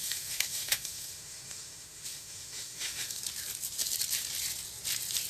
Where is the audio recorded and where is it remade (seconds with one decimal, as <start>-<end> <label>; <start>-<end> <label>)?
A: 0.0-3.2 remade; 3.2-5.3 recorded